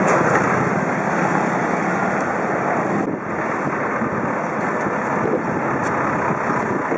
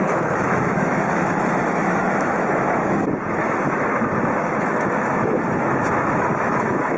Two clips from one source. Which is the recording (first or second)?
first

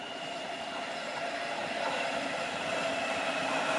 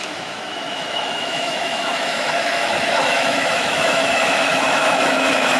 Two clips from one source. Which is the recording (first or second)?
first